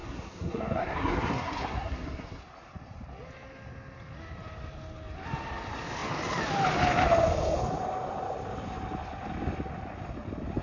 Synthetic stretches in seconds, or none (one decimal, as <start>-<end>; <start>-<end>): 0.0-2.4